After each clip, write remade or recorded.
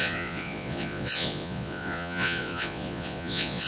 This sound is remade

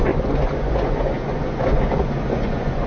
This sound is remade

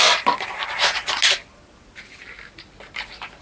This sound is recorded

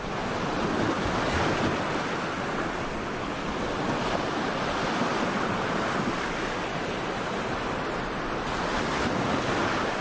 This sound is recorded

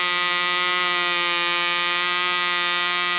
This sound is recorded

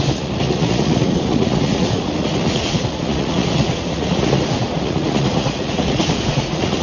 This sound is remade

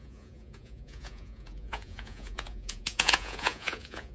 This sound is remade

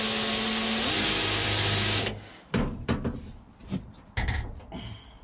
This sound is recorded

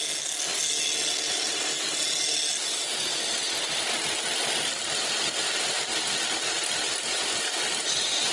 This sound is recorded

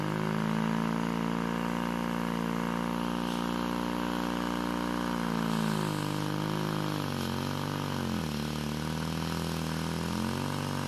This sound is recorded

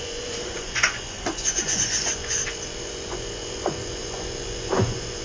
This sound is remade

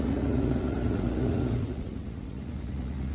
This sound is remade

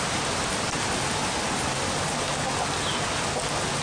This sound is recorded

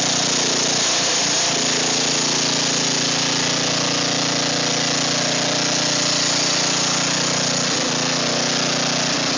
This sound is recorded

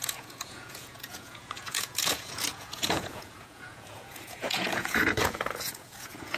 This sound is remade